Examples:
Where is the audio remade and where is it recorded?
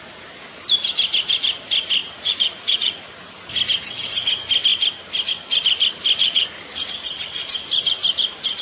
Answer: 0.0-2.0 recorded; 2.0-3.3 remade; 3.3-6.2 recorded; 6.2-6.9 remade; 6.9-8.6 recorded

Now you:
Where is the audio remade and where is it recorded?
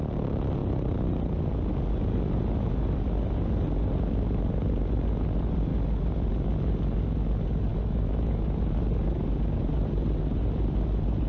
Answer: 0.0-7.7 recorded; 7.7-8.4 remade; 8.4-11.3 recorded